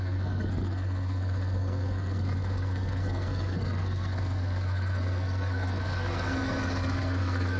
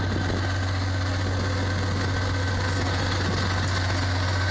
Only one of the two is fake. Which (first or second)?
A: first